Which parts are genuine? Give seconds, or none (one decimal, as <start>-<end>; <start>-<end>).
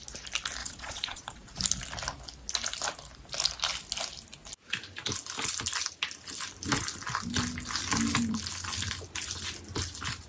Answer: 0.0-0.6; 1.6-10.3